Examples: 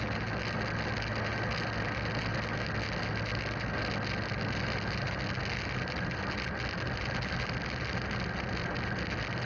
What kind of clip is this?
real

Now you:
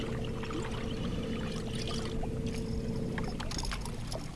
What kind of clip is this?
real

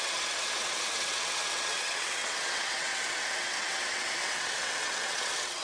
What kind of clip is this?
fake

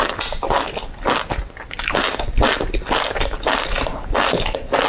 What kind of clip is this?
fake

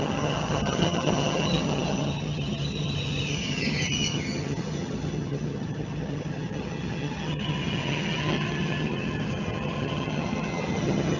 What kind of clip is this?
fake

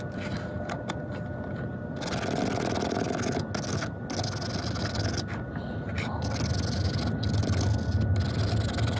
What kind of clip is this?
real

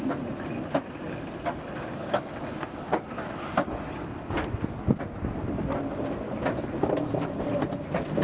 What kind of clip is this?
real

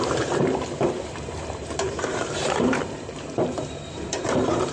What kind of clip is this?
fake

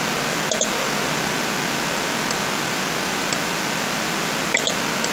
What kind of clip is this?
real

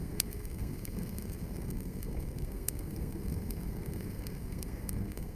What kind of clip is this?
fake